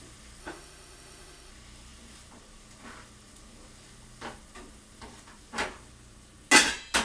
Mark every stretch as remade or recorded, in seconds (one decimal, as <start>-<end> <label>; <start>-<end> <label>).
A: 0.0-0.4 recorded; 0.4-1.5 remade; 1.5-7.0 recorded